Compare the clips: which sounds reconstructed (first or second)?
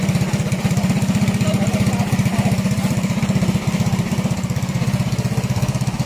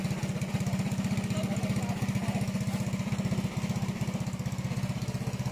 first